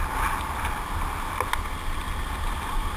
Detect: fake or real real